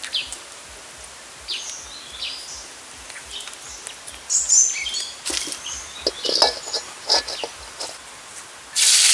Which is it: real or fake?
real